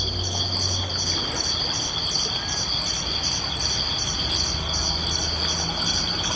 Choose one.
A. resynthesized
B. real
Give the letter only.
B